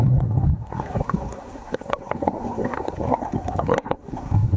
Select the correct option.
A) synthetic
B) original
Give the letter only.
A